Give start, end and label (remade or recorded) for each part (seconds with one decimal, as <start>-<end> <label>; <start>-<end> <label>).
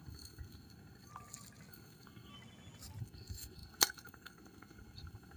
0.0-1.1 remade; 1.1-1.7 recorded; 1.7-2.3 remade; 2.3-3.0 recorded; 3.0-5.4 remade